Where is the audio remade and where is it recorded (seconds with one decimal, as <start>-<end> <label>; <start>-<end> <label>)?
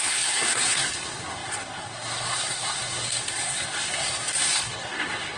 0.0-5.4 remade